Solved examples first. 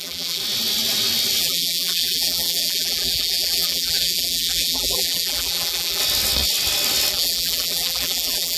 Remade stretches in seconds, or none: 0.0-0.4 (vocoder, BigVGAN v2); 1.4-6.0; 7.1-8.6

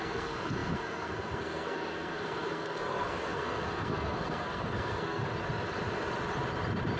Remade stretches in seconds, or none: 0.0-5.2 (codec, SNAC)